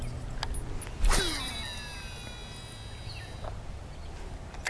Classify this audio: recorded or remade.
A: recorded